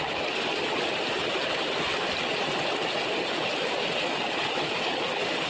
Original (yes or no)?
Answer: yes